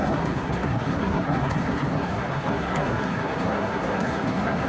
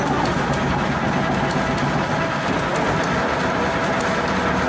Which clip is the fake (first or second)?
first